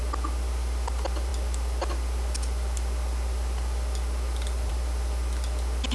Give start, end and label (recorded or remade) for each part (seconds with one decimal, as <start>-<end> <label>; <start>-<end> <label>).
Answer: 0.0-5.9 recorded